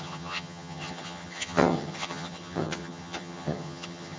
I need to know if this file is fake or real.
fake